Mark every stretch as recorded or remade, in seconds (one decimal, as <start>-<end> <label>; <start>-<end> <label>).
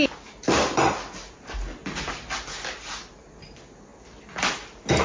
0.0-5.0 recorded